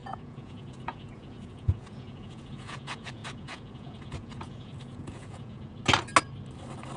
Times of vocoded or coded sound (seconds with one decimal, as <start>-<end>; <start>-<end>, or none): 0.0-5.7